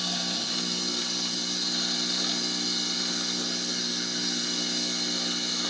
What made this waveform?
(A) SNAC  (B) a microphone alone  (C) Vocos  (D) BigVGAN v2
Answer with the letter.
B